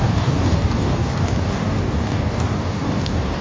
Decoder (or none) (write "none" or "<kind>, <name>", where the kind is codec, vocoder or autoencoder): codec, DAC